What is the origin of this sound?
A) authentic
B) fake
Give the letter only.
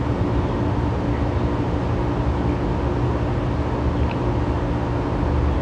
A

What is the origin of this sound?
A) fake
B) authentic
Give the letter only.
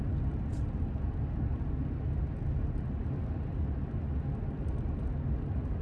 B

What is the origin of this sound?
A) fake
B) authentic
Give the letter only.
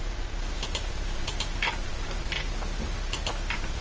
A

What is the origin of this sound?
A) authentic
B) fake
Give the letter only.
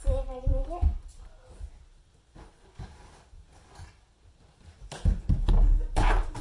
A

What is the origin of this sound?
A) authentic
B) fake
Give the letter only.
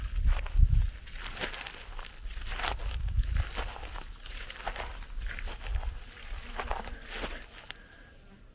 A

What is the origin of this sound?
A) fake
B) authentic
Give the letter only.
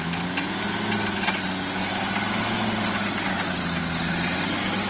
B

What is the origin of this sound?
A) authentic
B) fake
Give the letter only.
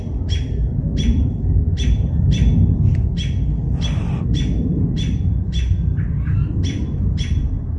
B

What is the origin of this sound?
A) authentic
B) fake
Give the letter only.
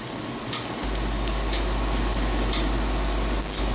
A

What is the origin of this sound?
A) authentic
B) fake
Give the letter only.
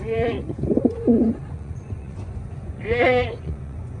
B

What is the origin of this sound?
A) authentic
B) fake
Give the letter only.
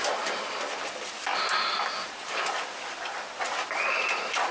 A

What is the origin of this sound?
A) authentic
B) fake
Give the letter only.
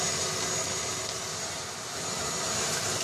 A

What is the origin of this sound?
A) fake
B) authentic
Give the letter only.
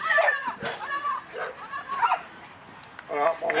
B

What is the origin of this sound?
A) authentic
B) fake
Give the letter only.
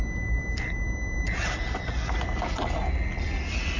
A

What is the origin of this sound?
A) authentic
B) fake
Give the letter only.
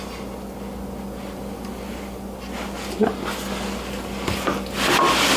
A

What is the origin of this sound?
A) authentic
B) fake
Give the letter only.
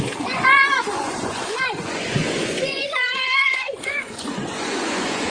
B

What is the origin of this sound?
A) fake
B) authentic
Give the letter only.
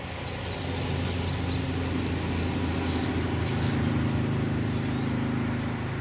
B